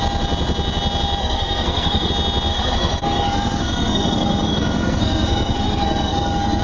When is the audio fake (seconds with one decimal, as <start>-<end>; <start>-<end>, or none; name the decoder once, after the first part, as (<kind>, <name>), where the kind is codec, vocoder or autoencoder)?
1.2-2.1 (codec, SNAC); 2.5-6.6